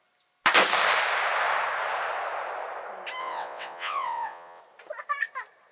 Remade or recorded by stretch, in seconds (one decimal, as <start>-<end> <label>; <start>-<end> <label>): 0.0-3.2 recorded; 3.2-4.6 remade; 4.6-5.7 recorded